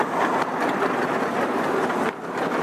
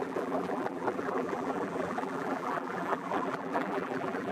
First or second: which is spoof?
second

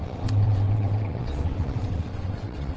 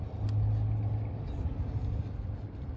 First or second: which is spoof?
first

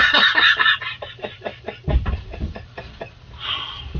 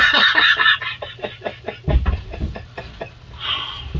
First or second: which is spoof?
first